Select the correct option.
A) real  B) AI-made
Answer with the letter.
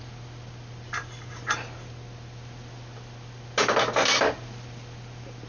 A